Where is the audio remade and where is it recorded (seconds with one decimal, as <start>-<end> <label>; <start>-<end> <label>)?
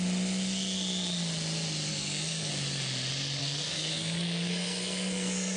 0.0-1.9 recorded; 1.9-2.5 remade; 2.5-3.4 recorded; 3.4-5.6 remade